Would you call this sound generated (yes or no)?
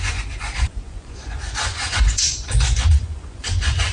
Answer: yes